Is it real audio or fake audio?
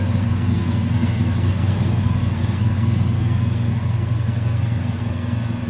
fake